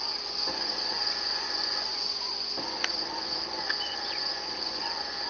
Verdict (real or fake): fake